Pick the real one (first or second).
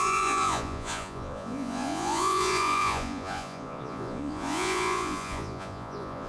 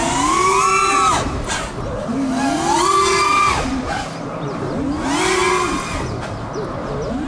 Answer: second